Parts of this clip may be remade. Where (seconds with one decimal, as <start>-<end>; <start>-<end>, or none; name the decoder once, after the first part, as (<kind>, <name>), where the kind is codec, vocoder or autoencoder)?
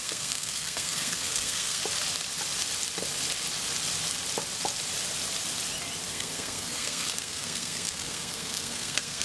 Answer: 0.0-1.8 (codec, SNAC); 6.1-9.2